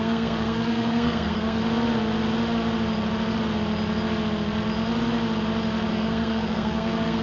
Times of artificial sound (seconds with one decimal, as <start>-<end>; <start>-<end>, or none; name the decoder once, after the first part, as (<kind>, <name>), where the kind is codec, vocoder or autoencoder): 0.0-1.6 (codec, SNAC); 5.9-7.2